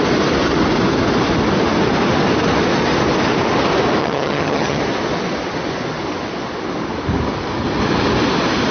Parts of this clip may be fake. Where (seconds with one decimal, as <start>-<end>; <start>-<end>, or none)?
4.0-4.8